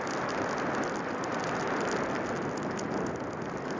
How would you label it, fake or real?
real